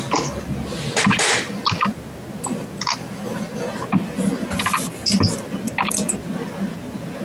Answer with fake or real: real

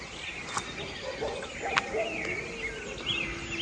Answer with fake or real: real